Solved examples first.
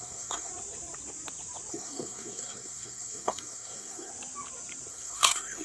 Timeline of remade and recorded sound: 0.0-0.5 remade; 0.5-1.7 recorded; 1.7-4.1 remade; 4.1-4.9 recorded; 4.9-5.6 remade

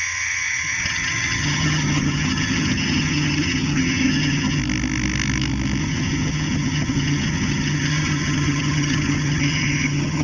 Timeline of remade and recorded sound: 0.0-4.6 remade; 4.6-5.8 recorded; 5.8-10.2 remade